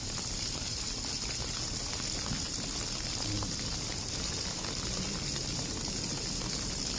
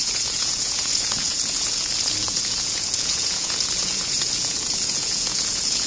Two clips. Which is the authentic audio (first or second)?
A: first